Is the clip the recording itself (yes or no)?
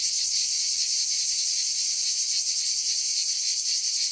yes